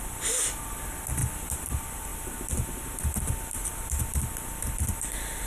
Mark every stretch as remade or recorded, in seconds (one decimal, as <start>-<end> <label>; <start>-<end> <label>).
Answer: 0.0-5.5 recorded